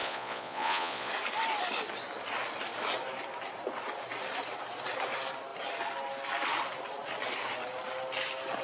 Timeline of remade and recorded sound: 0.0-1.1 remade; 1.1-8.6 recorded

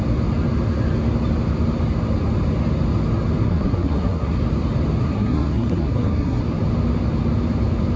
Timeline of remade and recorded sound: 0.0-3.4 recorded; 3.4-4.4 remade; 4.4-5.0 recorded; 5.0-6.4 remade; 6.4-8.0 recorded

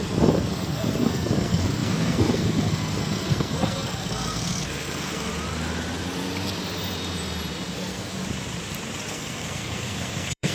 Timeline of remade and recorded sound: 0.0-5.3 remade; 5.3-7.7 recorded; 7.7-8.1 remade; 8.1-9.1 recorded; 9.1-10.5 remade

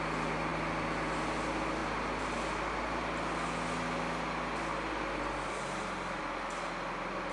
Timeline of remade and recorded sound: 0.0-7.3 recorded

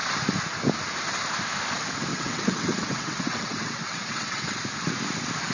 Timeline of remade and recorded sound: 0.0-2.1 recorded; 2.1-4.6 remade; 4.6-5.5 recorded